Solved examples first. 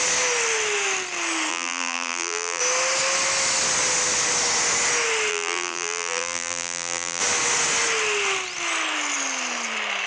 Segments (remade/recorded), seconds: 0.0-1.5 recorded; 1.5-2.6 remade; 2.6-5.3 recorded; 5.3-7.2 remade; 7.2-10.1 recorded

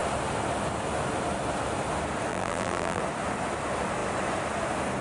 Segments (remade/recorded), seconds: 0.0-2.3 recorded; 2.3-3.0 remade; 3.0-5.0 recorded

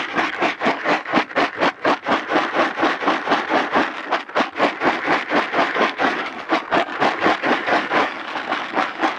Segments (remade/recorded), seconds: 0.0-1.1 remade; 1.1-5.7 recorded; 5.7-6.9 remade; 6.9-7.4 recorded; 7.4-9.2 remade

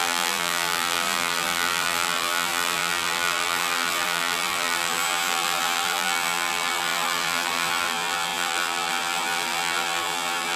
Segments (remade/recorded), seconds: 0.0-10.6 remade

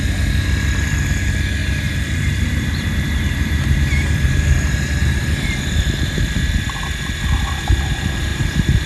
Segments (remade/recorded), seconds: 0.0-1.6 recorded; 1.6-6.4 remade; 6.4-8.3 recorded; 8.3-8.9 remade

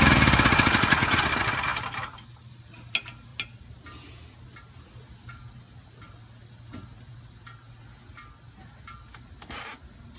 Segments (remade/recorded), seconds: 0.0-1.7 recorded; 1.7-2.6 remade; 2.6-3.3 recorded; 3.3-4.9 remade; 4.9-10.2 recorded

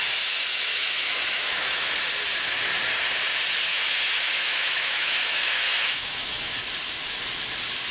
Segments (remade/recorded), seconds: 0.0-0.7 recorded; 0.7-1.9 remade; 1.9-3.7 recorded; 3.7-6.5 remade; 6.5-7.9 recorded

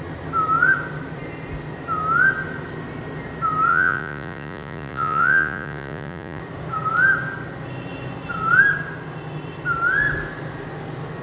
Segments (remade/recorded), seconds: 0.0-3.7 recorded; 3.7-6.4 remade; 6.4-11.2 recorded